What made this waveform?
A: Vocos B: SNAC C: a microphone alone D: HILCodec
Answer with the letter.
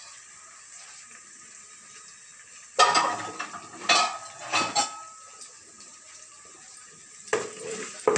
C